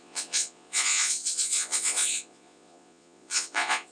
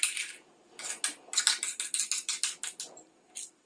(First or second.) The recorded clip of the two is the second